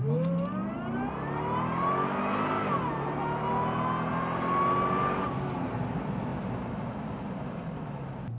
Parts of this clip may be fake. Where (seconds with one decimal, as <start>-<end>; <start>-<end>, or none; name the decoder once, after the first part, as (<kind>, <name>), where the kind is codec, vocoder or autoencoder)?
none